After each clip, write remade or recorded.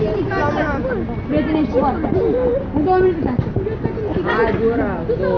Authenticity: recorded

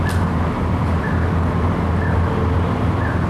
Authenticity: remade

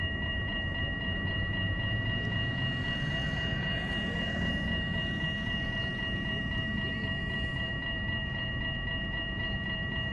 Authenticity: remade